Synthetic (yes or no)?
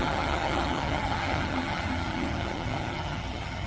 yes